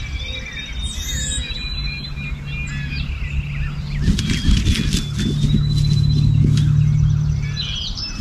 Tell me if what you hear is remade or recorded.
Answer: recorded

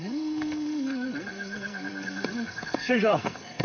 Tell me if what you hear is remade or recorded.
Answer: remade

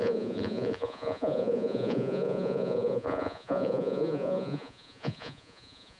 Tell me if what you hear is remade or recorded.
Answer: remade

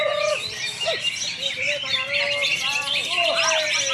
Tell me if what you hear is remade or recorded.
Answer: recorded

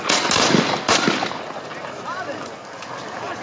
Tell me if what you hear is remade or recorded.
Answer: recorded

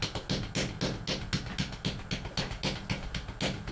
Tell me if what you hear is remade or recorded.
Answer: recorded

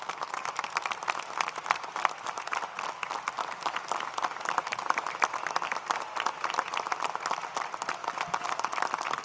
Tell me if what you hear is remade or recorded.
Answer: recorded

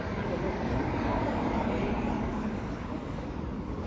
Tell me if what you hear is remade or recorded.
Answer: remade